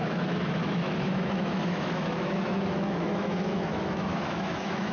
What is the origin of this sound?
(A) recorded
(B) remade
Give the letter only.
B